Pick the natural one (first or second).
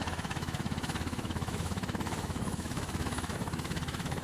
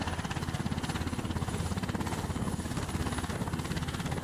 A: second